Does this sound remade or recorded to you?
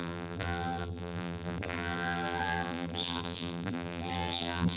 remade